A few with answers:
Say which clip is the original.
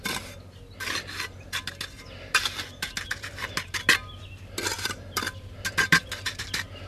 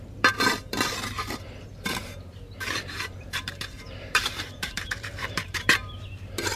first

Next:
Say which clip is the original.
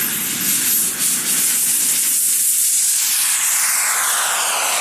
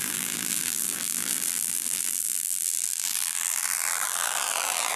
first